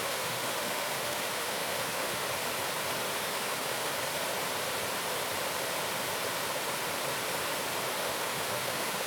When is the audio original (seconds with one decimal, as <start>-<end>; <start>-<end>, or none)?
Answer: 2.2-3.2; 3.9-8.0

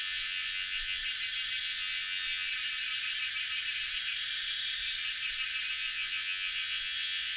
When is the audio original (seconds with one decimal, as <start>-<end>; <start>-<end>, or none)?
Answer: 1.0-1.6; 2.5-5.7

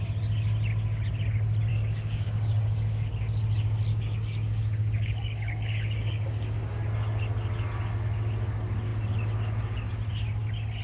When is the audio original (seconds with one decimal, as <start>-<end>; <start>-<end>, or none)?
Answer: 0.0-1.7; 3.1-3.9; 6.8-10.8

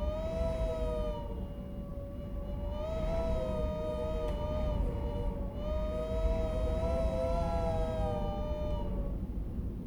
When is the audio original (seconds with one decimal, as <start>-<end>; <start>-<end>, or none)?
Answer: 0.0-9.9

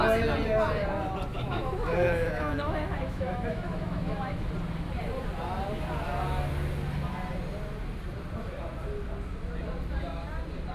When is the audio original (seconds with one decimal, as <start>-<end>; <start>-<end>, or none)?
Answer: 0.0-1.3; 4.5-10.7

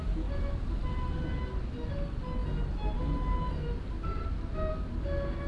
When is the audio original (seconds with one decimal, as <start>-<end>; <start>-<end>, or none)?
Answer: 0.0-0.8; 1.3-5.5

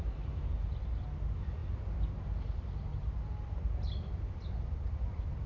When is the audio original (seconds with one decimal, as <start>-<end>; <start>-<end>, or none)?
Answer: 0.0-5.5